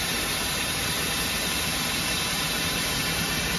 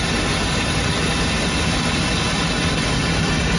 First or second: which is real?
second